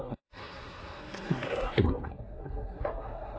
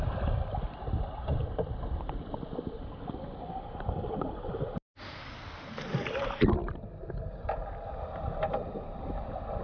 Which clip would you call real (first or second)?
second